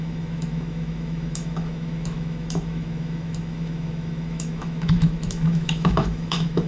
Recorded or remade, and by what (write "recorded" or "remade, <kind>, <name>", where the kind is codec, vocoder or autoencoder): remade, autoencoder, DAC-VAE